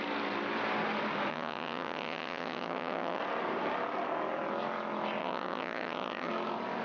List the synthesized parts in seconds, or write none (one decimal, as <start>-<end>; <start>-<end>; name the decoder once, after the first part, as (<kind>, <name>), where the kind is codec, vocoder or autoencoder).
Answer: 1.3-3.2 (vocoder, HiFi-GAN); 5.2-6.3